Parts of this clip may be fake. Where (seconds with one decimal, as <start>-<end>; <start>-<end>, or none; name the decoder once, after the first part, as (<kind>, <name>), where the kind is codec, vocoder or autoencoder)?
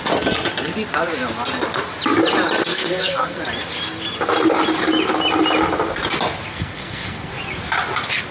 2.7-3.4 (codec, SNAC); 6.5-7.3